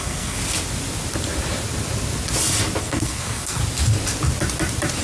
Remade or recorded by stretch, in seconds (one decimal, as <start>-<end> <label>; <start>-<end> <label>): 0.0-0.4 remade; 0.4-2.8 recorded; 2.8-3.6 remade; 3.6-5.0 recorded